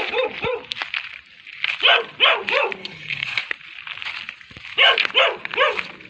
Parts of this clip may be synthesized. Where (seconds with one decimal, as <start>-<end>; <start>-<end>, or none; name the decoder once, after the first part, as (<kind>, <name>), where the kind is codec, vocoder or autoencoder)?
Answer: 2.8-3.4 (codec, HILCodec)